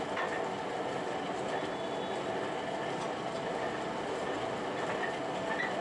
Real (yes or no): yes